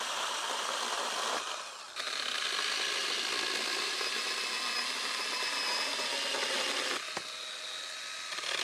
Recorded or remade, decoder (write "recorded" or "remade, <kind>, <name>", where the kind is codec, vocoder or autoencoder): recorded